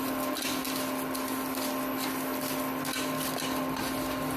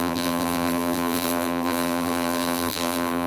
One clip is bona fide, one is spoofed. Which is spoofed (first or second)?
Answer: second